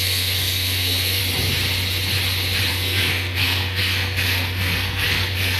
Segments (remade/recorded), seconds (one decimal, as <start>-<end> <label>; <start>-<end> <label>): 0.0-1.2 remade; 1.2-2.7 recorded; 2.7-5.6 remade